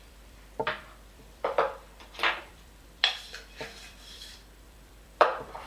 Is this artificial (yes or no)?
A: yes